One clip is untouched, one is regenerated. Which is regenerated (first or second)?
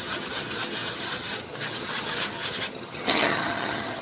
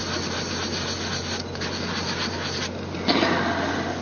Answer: first